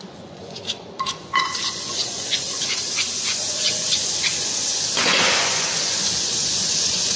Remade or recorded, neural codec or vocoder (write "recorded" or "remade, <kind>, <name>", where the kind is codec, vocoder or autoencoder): remade, vocoder, Vocos